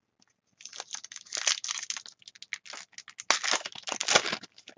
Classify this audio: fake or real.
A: real